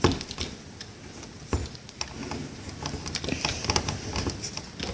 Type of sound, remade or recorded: recorded